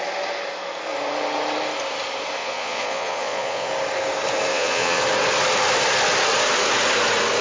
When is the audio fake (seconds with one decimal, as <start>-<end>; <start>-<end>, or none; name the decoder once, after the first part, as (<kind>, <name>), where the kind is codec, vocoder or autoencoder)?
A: 2.4-3.7 (vocoder, Vocos); 4.5-5.0

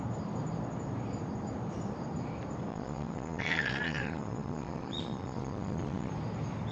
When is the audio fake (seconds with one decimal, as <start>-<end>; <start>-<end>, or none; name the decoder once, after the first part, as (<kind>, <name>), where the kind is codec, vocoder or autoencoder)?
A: 2.7-6.1 (vocoder, Vocos)

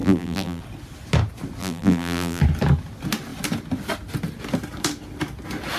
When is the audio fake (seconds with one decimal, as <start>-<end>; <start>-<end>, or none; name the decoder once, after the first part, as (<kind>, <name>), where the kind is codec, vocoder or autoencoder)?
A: 0.0-0.6 (vocoder, BigVGAN v2); 1.6-2.4

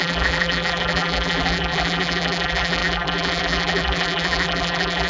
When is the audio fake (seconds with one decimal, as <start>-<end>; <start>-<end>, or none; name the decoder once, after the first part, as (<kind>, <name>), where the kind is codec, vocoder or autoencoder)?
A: 0.0-5.1 (vocoder, BigVGAN v2)

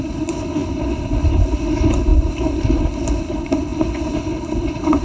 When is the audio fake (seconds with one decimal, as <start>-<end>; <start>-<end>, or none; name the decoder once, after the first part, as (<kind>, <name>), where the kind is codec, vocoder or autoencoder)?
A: 0.0-5.0 (codec, HILCodec)

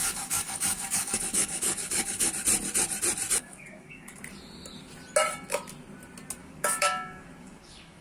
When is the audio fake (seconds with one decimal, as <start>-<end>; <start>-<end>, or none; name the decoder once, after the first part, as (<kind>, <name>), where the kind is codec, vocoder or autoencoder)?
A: 0.0-2.3 (codec, DAC); 3.4-4.2; 6.4-8.0